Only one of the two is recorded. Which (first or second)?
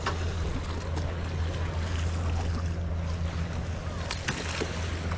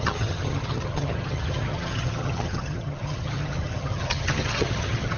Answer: first